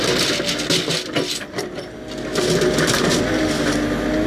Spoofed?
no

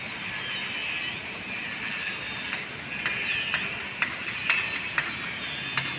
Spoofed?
no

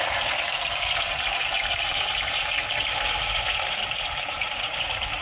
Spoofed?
yes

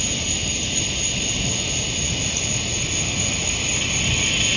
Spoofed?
no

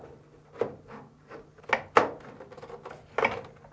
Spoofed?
no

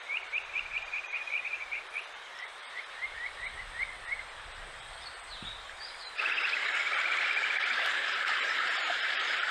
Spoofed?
yes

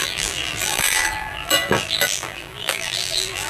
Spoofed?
yes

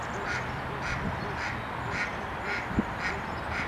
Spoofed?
no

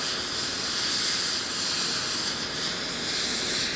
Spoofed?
no